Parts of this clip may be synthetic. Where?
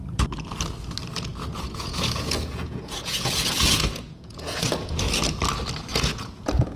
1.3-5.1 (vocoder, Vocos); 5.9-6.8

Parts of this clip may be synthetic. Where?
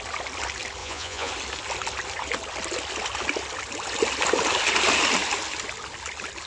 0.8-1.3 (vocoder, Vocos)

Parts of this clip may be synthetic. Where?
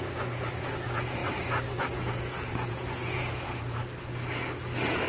0.0-1.2 (vocoder, Vocos); 2.1-3.8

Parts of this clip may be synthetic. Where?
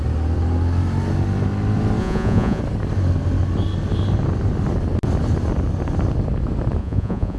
2.0-2.6 (vocoder, Vocos); 6.8-7.4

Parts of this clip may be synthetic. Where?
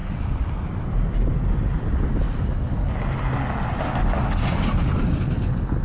none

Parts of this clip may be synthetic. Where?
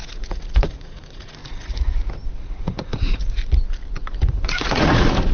0.0-3.4 (vocoder, Vocos); 4.1-5.3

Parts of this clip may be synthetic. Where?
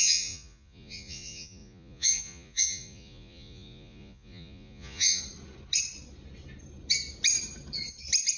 0.0-5.2 (vocoder, Vocos)